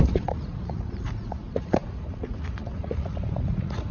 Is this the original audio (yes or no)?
no